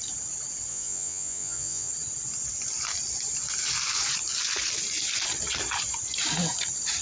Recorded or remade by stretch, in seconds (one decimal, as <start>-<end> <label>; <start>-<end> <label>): 0.0-0.7 recorded; 0.7-1.9 remade; 1.9-7.0 recorded